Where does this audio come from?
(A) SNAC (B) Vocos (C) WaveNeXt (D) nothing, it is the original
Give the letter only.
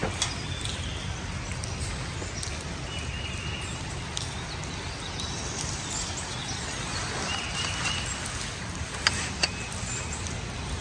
D